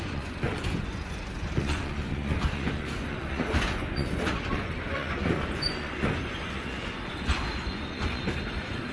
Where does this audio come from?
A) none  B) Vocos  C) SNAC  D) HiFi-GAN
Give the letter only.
B